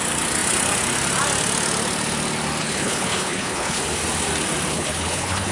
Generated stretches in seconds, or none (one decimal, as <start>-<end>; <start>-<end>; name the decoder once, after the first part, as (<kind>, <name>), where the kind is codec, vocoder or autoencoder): 2.6-3.8 (codec, HILCodec); 4.7-5.5